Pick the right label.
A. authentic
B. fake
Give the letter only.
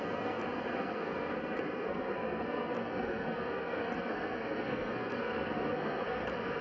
B